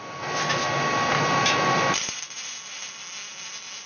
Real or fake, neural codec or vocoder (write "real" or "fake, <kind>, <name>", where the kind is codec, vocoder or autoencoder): real